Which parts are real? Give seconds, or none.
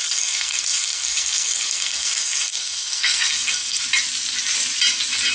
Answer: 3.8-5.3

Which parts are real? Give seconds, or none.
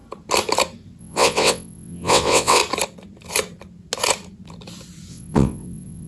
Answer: 0.0-1.0; 2.6-5.1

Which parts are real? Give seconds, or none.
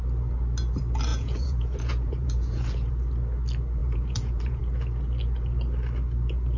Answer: 0.0-1.1; 2.9-3.8; 4.6-6.6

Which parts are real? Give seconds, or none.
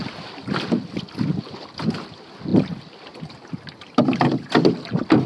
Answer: 0.0-5.3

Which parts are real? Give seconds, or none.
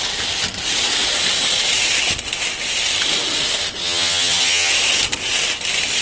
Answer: 0.0-3.8; 4.7-6.0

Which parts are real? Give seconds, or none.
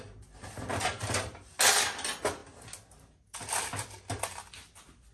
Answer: 0.0-0.7; 1.4-5.1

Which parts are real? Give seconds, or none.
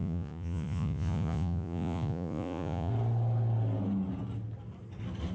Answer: 2.9-5.3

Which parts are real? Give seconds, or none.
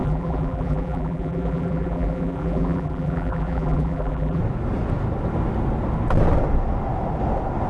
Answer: 4.4-7.7